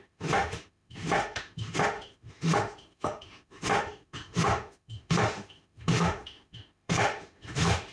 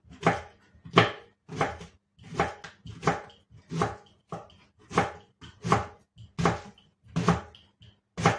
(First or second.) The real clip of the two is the second